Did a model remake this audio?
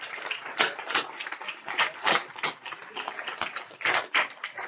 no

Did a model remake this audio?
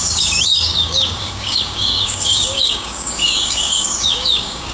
yes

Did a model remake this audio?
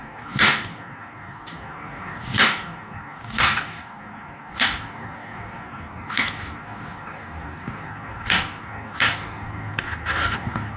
yes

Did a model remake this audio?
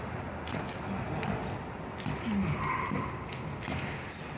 no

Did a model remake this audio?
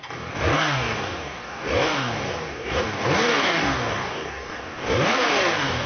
yes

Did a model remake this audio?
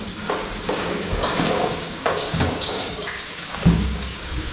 yes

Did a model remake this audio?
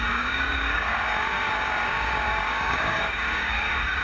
yes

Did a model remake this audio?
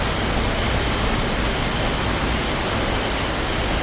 no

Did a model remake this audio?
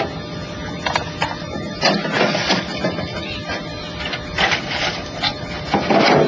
no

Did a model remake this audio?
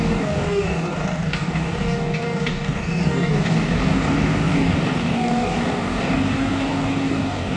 yes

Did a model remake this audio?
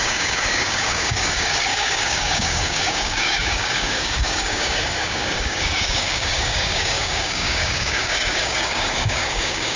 yes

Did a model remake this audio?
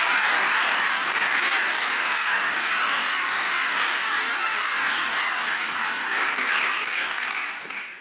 yes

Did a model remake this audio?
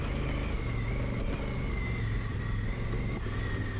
no